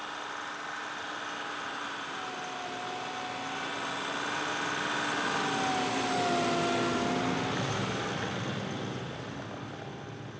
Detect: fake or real real